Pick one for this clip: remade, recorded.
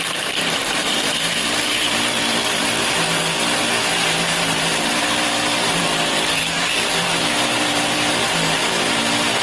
remade